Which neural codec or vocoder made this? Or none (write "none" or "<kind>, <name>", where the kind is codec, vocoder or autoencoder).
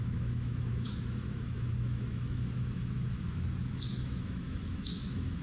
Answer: autoencoder, DAC-VAE